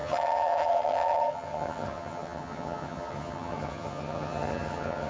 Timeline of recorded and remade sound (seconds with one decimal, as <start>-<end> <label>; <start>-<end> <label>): 0.0-5.1 remade